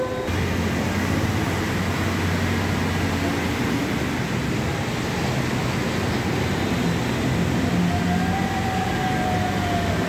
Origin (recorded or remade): recorded